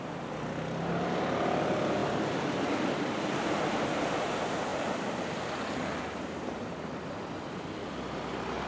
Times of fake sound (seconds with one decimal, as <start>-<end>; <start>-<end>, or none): 4.7-7.9